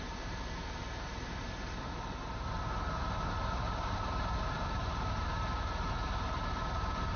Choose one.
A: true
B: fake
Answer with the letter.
B